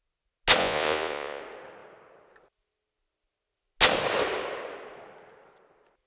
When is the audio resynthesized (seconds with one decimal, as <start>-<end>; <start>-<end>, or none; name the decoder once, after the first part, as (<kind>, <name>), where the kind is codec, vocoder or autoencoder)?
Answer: 0.6-1.4 (vocoder, Vocos)